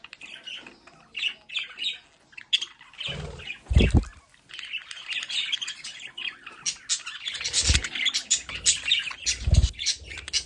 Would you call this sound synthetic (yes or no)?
no